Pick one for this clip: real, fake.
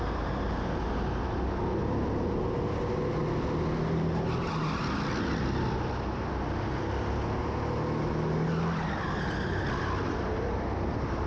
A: real